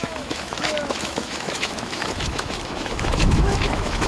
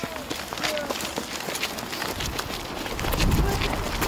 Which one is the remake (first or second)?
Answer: first